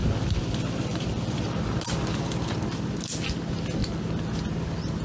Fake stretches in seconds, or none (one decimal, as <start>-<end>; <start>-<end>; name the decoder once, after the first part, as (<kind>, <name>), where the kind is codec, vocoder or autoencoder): 0.0-3.0 (vocoder, BigVGAN v2); 3.8-4.4